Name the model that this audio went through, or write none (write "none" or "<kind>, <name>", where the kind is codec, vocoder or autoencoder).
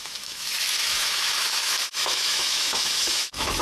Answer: autoencoder, DAC-VAE